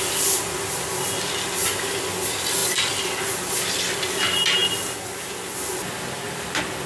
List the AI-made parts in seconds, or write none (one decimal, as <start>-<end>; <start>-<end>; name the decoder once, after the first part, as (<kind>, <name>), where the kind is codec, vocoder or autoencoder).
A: none